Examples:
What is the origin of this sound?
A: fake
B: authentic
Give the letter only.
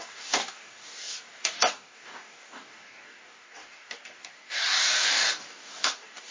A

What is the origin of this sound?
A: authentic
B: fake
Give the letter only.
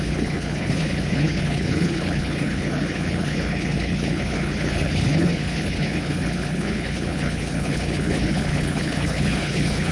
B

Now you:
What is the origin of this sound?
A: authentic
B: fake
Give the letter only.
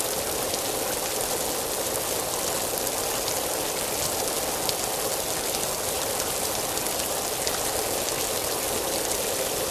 A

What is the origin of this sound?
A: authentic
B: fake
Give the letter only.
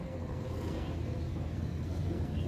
B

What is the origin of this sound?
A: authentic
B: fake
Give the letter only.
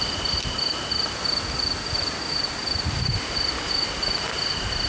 A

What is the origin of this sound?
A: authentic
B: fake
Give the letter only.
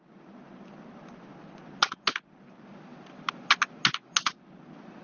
A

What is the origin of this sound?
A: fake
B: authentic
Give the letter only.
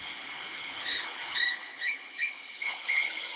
A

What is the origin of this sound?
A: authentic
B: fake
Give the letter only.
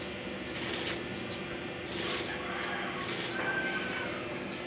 B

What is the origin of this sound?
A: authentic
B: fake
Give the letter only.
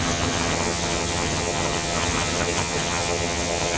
B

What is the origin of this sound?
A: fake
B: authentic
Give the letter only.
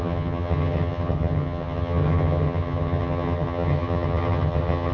A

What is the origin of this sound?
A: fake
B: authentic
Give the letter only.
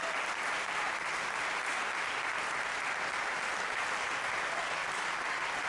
B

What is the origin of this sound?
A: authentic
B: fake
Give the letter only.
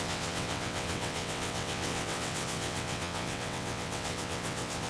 B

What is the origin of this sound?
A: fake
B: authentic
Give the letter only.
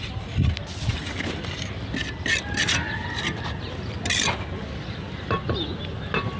B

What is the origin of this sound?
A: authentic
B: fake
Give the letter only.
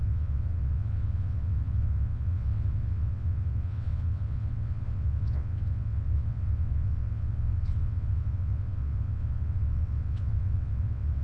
B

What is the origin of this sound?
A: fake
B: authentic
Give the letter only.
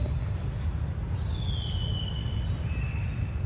B